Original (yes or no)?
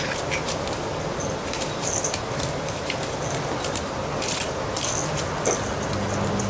yes